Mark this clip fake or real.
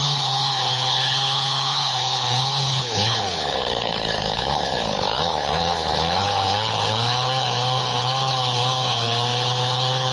fake